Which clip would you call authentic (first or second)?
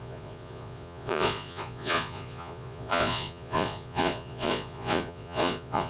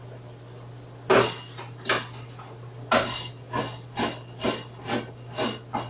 second